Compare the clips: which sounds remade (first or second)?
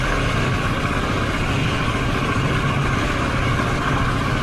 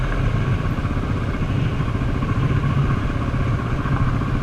first